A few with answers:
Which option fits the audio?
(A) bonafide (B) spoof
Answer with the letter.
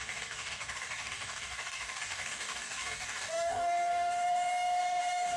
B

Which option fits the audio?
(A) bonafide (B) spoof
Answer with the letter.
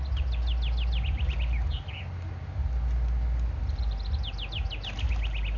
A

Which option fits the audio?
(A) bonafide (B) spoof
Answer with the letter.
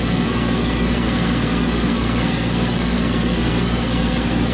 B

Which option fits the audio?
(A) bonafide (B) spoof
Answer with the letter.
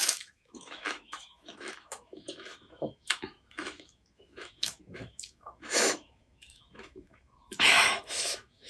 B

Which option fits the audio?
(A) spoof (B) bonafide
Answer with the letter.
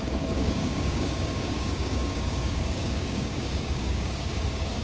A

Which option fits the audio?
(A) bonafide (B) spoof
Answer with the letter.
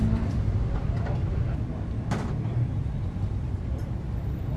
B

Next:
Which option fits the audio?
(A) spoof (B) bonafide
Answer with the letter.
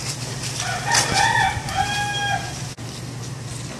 B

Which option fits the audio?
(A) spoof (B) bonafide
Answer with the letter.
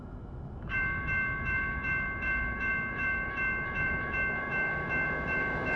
A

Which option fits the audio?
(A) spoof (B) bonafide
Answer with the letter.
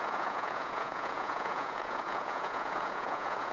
A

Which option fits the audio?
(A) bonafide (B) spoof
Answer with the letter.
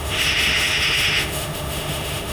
B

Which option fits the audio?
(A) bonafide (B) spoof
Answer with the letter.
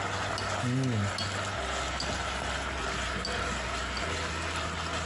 A